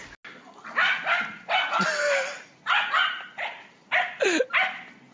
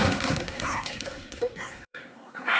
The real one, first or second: first